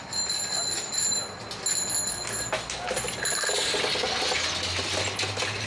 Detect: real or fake real